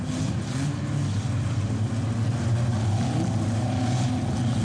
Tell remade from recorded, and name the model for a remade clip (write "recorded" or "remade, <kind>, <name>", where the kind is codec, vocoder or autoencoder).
recorded